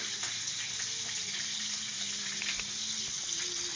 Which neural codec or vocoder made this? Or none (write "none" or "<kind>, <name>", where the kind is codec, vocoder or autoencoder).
none